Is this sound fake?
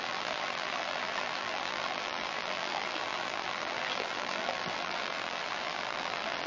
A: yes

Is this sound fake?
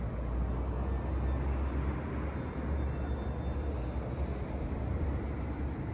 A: no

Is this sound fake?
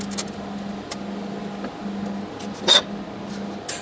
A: no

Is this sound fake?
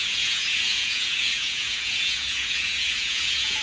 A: yes